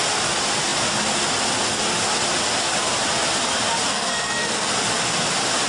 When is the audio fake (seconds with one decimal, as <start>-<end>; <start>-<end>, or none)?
3.9-4.7